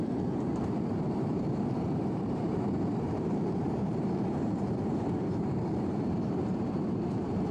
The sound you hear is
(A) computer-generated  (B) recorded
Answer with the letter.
A